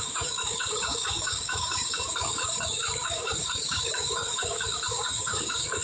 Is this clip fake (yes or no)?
yes